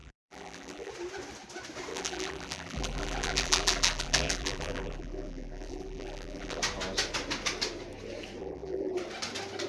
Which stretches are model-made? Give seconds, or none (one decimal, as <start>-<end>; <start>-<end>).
0.0-0.9; 1.9-6.6; 8.4-8.9

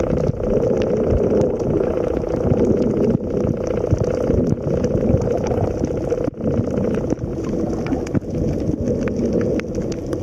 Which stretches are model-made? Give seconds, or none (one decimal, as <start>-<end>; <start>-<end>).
7.3-7.8